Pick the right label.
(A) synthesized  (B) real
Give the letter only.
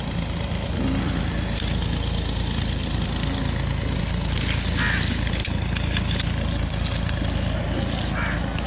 B